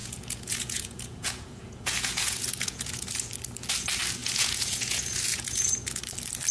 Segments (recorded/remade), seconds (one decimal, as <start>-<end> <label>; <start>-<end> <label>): 0.0-3.3 remade; 3.3-4.2 recorded; 4.2-6.0 remade; 6.0-6.5 recorded